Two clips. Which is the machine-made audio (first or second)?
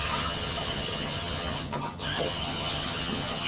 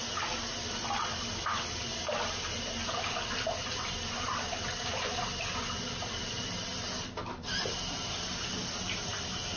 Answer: first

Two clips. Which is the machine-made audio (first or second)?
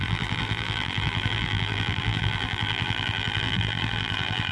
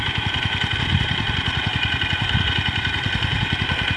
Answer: first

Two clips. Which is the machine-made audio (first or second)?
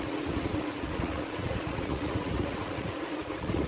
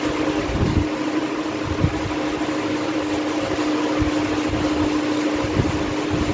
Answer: first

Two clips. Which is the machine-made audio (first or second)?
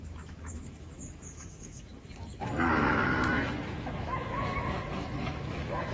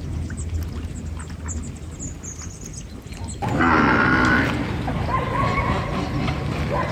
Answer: first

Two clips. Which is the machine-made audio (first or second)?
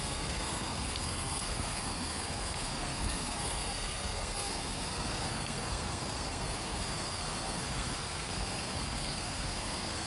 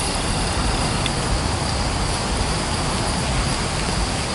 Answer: first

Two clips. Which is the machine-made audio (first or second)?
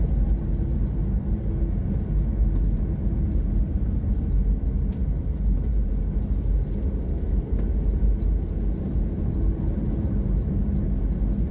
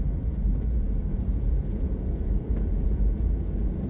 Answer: second